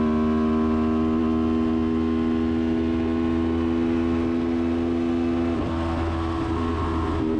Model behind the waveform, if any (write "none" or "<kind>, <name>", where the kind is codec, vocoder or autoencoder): none